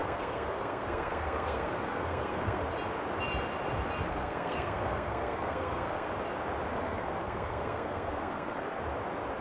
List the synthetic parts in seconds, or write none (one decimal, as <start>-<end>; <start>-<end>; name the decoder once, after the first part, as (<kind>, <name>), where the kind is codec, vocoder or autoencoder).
0.0-2.6 (codec, SNAC); 4.1-6.1; 6.7-8.8